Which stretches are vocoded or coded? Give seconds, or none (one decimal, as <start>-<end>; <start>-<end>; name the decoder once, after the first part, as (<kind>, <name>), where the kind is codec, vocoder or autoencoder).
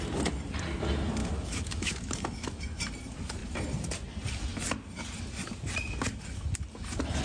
1.2-2.8 (autoencoder, DAC-VAE)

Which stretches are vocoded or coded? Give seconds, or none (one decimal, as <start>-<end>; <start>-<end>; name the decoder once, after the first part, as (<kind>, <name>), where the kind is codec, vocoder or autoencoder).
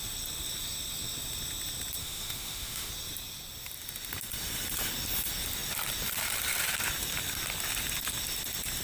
2.0-2.9 (autoencoder, DAC-VAE)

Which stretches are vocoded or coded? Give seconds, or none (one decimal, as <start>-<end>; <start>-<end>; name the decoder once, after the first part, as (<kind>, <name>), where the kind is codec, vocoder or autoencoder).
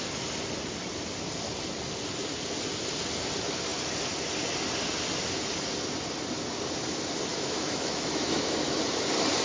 7.3-8.8 (autoencoder, DAC-VAE)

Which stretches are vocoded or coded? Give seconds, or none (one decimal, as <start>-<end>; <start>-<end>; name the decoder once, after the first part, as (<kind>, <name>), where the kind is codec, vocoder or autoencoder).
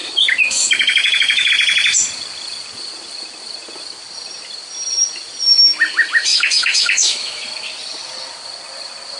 0.0-1.5 (autoencoder, DAC-VAE); 6.3-7.4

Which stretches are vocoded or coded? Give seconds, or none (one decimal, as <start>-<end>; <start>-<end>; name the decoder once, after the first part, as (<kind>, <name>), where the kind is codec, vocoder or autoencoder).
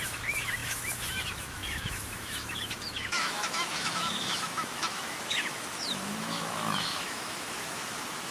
0.0-8.3 (autoencoder, DAC-VAE)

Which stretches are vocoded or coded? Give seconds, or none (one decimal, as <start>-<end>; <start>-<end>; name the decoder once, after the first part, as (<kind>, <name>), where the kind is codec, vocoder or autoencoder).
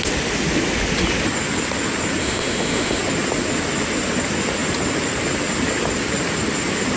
2.2-3.0 (autoencoder, DAC-VAE)